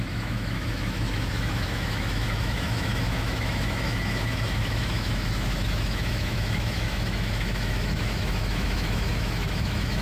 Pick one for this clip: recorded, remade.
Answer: remade